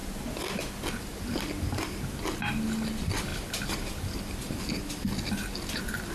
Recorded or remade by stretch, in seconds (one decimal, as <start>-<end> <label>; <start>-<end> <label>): 0.0-1.1 recorded; 1.1-2.0 remade; 2.0-3.3 recorded; 3.3-4.6 remade; 4.6-6.1 recorded